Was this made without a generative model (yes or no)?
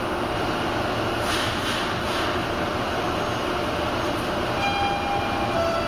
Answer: yes